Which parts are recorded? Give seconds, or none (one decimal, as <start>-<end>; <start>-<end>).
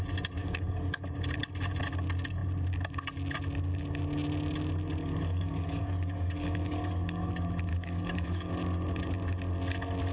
0.0-0.4; 1.0-5.0; 7.3-7.7; 8.5-10.1